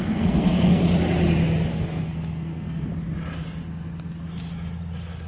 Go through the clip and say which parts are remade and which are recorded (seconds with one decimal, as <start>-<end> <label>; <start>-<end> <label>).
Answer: 0.0-0.8 remade; 0.8-1.7 recorded; 1.7-2.9 remade; 2.9-5.3 recorded